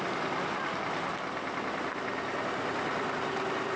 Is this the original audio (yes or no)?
yes